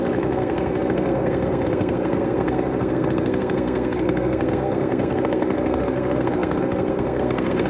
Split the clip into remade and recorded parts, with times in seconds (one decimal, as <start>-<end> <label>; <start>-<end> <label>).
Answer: 0.0-7.7 remade